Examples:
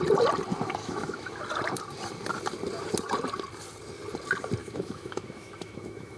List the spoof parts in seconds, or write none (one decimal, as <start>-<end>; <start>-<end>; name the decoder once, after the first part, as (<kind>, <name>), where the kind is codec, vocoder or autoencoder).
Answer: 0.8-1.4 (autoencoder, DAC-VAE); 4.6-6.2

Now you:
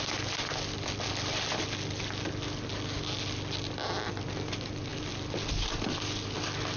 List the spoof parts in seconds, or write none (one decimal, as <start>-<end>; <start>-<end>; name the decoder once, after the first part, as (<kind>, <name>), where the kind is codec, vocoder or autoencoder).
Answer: none

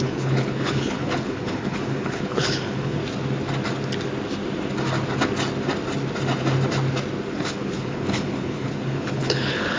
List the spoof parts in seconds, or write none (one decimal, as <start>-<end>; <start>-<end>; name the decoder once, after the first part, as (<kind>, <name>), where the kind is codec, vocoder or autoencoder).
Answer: 0.0-3.0 (codec, HILCodec); 7.3-9.8

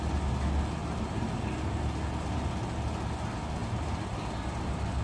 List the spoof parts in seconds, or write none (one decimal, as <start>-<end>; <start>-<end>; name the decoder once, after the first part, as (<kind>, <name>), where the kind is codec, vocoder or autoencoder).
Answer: 0.8-1.5 (vocoder, BigVGAN v2); 3.6-4.3

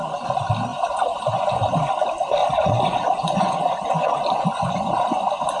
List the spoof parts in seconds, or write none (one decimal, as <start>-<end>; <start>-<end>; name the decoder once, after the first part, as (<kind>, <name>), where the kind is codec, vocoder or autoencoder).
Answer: 0.7-1.9 (vocoder, Vocos); 2.4-4.9

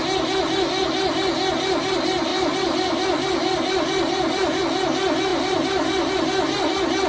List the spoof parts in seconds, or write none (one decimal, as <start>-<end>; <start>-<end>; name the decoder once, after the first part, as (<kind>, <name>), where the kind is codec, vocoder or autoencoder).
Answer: 2.3-4.6 (vocoder, BigVGAN v2); 5.3-6.1

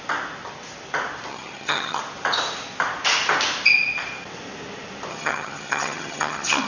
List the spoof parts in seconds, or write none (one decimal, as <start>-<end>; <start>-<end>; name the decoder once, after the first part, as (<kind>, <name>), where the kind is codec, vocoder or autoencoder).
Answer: 1.3-2.0 (vocoder, HiFi-GAN); 5.1-6.7

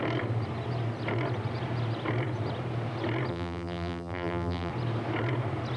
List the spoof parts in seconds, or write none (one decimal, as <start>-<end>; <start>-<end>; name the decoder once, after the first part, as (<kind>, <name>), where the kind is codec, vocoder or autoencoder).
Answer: 3.3-4.7 (vocoder, BigVGAN v2)